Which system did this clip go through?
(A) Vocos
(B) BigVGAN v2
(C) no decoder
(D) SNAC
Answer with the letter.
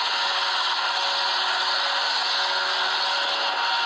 C